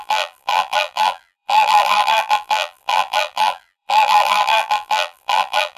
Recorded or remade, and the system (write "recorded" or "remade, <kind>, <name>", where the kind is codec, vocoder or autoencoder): remade, vocoder, BigVGAN v2